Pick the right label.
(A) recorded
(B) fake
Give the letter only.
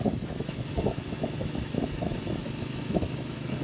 B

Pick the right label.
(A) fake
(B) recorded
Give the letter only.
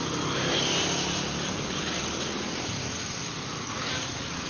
B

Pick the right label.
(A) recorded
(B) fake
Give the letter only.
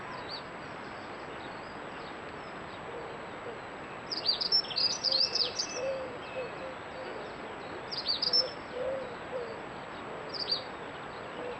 A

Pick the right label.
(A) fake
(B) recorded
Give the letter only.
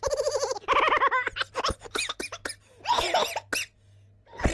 B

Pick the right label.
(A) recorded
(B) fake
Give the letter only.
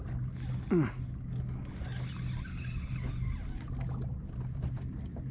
A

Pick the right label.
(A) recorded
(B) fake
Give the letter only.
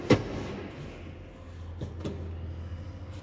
A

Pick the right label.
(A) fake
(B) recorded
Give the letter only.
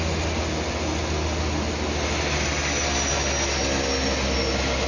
B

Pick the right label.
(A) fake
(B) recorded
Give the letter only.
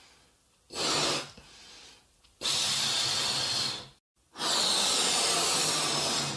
B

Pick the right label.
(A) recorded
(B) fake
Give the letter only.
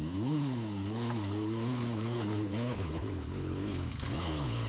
B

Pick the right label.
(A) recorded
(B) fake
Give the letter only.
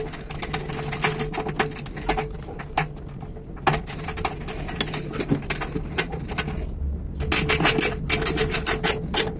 A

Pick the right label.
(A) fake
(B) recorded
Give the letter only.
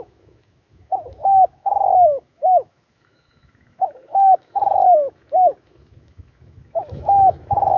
A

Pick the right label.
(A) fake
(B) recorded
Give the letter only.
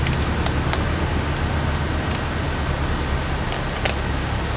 B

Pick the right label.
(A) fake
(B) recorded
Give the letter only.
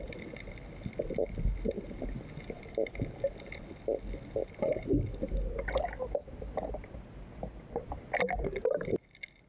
B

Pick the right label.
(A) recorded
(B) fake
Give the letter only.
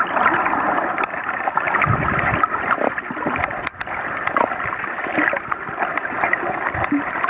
A